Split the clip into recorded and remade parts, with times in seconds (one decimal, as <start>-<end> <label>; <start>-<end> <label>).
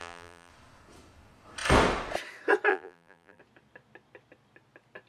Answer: 0.0-0.5 remade; 0.5-2.7 recorded; 2.7-3.4 remade; 3.4-5.1 recorded